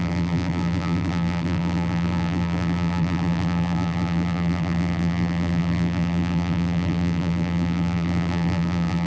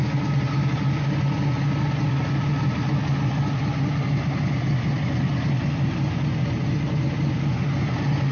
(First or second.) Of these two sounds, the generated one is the first